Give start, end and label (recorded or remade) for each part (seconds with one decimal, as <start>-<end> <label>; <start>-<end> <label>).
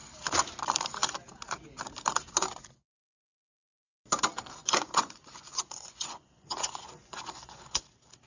0.0-4.6 recorded; 4.6-7.8 remade; 7.8-8.3 recorded